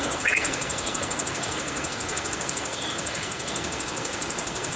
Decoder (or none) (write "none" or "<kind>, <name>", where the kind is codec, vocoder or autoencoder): codec, SNAC